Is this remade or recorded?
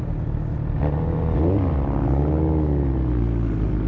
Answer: recorded